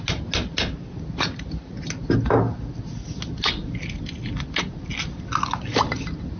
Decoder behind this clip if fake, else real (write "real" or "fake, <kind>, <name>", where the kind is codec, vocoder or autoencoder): real